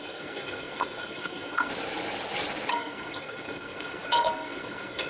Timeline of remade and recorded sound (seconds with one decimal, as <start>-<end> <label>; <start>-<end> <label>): 0.0-1.7 remade; 1.7-2.7 recorded; 2.7-5.1 remade